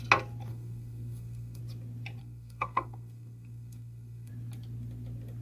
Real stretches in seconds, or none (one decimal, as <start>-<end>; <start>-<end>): 0.0-0.5; 1.6-2.2; 4.3-5.4